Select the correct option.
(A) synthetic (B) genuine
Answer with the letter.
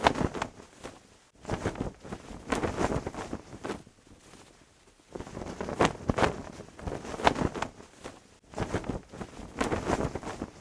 B